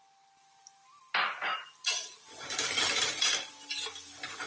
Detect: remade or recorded recorded